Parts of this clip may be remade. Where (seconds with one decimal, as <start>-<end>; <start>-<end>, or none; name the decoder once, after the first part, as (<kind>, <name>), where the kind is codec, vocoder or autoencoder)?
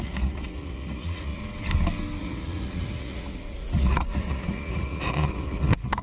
0.0-1.4 (vocoder, Vocos); 2.2-6.0